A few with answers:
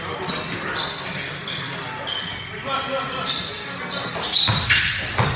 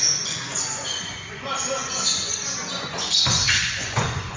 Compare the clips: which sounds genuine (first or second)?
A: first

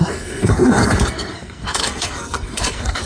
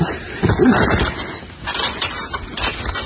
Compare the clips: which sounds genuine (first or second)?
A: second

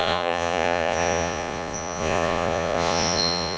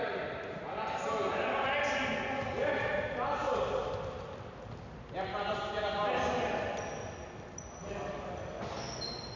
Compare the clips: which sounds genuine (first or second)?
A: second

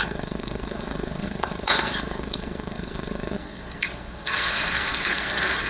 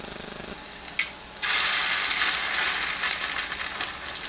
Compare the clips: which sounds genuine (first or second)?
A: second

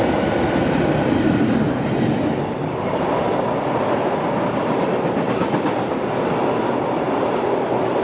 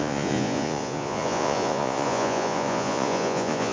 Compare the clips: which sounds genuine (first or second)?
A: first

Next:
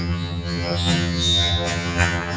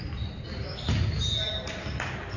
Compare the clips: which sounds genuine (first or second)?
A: second